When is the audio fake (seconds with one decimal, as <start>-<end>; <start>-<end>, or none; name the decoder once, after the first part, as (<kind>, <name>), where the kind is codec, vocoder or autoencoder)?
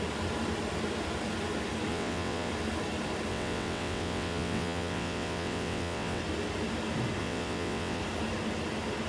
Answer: 1.9-2.5 (vocoder, WaveNeXt); 3.3-6.2; 7.2-8.0